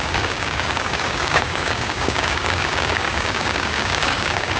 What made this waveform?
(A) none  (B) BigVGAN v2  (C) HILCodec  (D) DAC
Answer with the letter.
D